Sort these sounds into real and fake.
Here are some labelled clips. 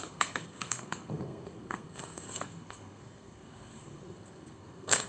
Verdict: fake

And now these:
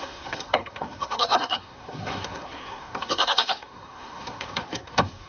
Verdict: fake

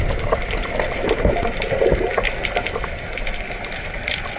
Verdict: real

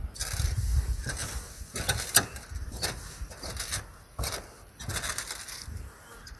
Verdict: real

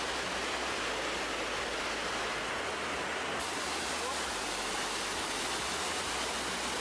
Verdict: real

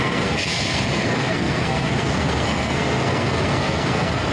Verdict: fake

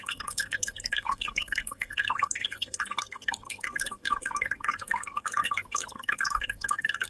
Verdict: fake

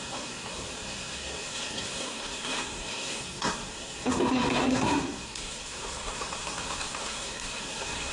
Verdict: fake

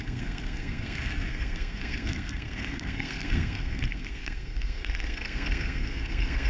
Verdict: fake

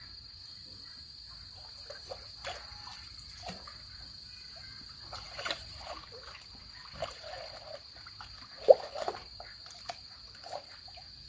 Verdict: real